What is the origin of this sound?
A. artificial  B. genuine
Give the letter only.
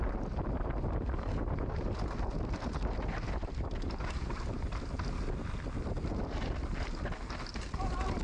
B